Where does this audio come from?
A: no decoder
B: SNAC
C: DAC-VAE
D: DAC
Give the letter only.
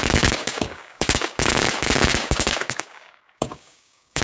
D